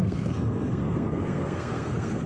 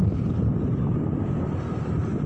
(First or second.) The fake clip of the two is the first